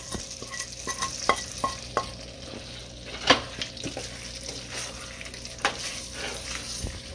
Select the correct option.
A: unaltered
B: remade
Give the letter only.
A